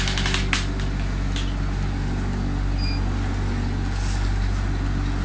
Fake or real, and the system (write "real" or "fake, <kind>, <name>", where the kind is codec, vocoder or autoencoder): real